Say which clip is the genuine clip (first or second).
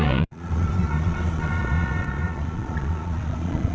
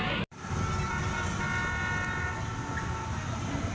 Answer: second